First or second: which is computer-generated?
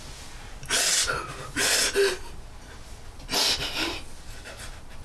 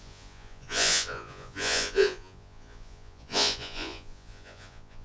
second